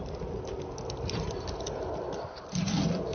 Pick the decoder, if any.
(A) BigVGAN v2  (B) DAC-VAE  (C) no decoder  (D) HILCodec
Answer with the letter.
C